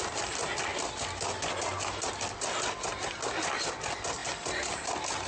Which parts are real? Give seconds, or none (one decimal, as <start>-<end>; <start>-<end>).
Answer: 0.0-5.3